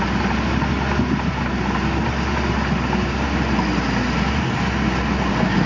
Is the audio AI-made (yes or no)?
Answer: no